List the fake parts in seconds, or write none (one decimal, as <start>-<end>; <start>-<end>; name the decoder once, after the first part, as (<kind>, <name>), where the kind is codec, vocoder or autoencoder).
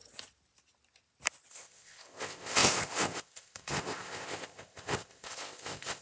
1.5-6.0 (codec, ZipCodec)